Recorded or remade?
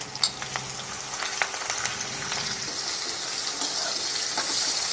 recorded